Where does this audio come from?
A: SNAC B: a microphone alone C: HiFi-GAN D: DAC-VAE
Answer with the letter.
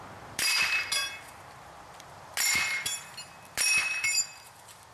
B